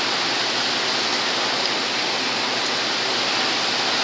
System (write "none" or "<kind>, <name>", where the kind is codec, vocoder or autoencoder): none